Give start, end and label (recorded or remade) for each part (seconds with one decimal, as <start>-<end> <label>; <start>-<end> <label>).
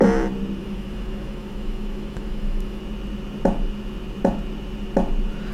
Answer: 0.0-0.6 recorded; 0.6-2.8 remade; 2.8-5.5 recorded